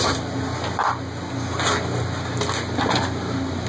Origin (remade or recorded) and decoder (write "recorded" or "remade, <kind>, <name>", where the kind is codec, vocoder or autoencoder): recorded